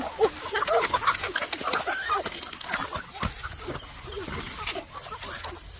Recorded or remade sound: recorded